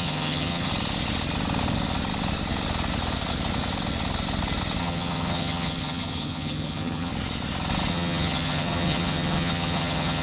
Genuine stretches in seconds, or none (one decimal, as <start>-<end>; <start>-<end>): 0.7-4.8; 7.1-7.9